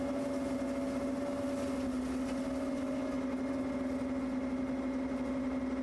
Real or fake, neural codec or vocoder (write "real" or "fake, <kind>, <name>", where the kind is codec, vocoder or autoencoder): real